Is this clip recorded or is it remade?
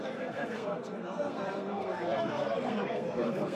remade